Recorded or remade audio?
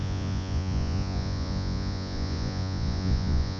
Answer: remade